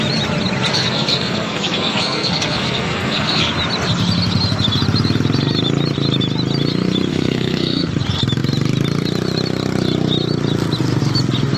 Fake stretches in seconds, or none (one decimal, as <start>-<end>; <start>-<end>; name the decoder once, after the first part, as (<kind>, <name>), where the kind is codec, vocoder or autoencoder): 0.7-3.5 (codec, SNAC); 7.1-7.9